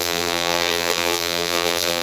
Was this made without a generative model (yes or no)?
no